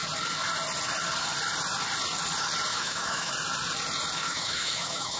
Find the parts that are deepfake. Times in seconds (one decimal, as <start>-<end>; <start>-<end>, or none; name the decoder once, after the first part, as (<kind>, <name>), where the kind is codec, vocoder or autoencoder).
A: 2.7-3.3 (autoencoder, DAC-VAE); 4.2-5.2